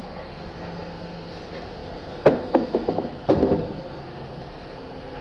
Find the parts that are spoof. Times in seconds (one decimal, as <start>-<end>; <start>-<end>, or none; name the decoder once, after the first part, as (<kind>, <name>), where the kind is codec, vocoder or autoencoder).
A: 0.0-5.2 (codec, SNAC)